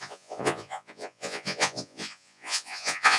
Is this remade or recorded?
remade